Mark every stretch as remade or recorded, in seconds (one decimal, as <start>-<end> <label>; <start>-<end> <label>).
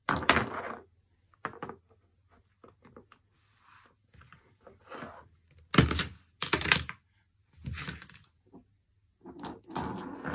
0.0-10.3 recorded